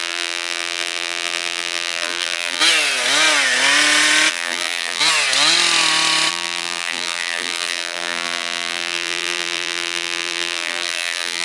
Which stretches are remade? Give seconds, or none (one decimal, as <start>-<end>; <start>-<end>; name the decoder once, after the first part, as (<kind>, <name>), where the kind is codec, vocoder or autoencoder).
0.0-2.6 (vocoder, BigVGAN v2); 4.3-5.0; 6.3-11.4